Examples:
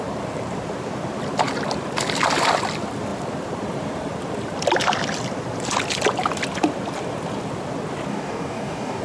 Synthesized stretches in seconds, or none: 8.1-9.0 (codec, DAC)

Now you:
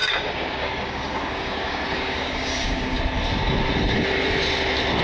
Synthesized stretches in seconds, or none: 0.0-3.0 (codec, DAC)

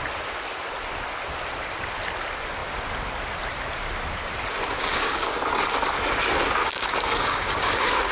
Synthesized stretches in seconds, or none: 4.8-5.4 (codec, DAC); 6.6-8.1